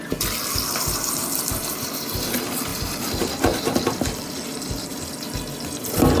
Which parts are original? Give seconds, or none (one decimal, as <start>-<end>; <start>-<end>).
4.9-5.8